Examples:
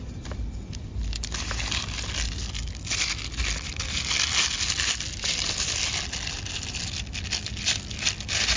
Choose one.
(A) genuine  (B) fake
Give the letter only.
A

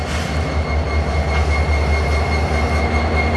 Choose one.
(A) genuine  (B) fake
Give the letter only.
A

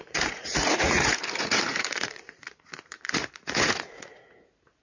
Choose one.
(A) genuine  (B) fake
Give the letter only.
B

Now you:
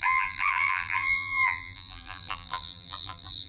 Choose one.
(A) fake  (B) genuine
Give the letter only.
A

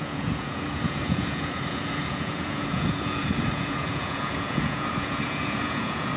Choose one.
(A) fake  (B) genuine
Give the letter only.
A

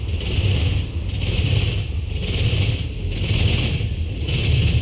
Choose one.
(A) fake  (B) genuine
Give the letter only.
B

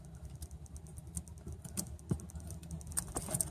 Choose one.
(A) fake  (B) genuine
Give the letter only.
B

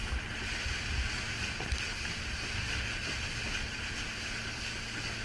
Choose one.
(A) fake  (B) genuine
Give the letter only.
B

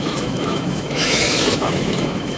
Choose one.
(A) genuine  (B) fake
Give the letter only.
B